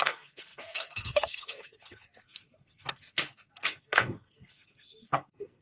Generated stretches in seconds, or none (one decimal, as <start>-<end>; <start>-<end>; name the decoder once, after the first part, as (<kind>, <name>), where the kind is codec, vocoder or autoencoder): 0.0-5.6 (codec, SNAC)